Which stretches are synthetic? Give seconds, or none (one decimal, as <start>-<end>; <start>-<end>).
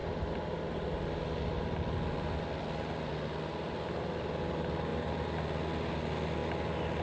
none